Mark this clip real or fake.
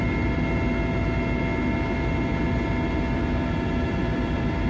real